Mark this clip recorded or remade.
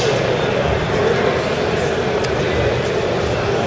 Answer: recorded